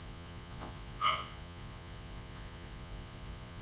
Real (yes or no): no